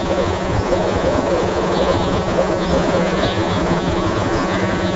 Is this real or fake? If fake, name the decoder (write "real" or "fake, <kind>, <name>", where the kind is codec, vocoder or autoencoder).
fake, vocoder, Vocos